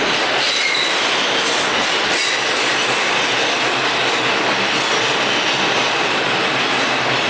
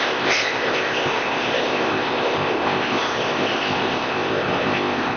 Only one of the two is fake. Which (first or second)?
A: second